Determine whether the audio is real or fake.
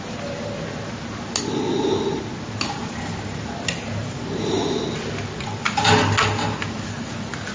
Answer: real